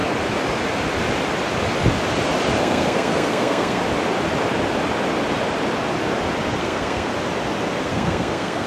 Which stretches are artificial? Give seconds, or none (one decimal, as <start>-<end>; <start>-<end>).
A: 2.6-3.8; 6.6-7.1; 7.8-8.7